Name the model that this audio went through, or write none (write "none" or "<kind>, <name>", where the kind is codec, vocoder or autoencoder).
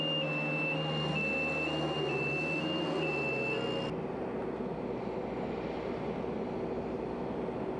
none